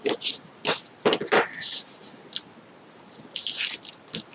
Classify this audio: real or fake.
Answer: real